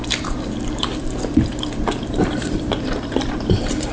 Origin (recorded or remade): remade